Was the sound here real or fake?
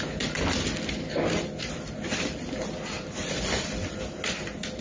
real